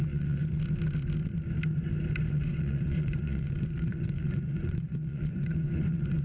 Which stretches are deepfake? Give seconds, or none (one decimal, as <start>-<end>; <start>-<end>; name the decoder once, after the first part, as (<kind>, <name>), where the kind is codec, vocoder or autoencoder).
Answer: 0.0-0.4 (vocoder, Vocos); 2.3-6.2